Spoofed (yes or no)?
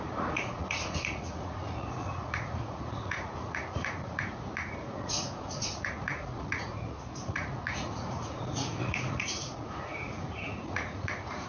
yes